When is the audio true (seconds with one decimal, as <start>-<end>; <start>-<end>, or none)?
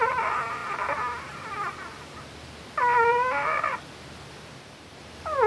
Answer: 0.6-1.5